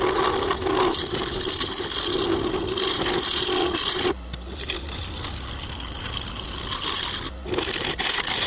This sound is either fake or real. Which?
real